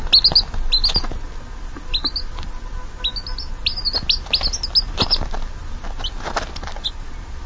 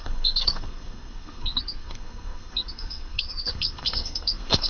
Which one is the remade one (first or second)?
second